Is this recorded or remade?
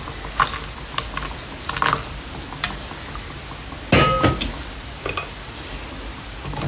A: recorded